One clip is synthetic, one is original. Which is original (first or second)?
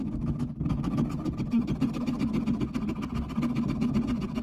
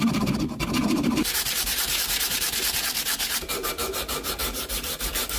first